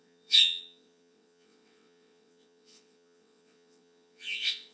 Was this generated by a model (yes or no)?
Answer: yes